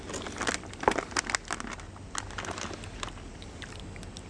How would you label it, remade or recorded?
recorded